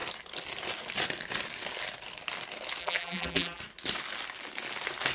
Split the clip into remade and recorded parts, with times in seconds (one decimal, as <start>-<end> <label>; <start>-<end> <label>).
0.0-2.8 recorded; 2.8-3.6 remade; 3.6-5.1 recorded